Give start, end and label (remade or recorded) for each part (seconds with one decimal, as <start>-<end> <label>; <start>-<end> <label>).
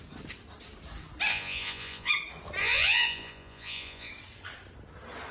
0.0-1.3 recorded; 1.3-2.1 remade; 2.1-2.6 recorded; 2.6-4.1 remade; 4.1-5.3 recorded